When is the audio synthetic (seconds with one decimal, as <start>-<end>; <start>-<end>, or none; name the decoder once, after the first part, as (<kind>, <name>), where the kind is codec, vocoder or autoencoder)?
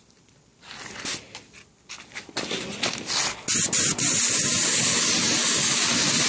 none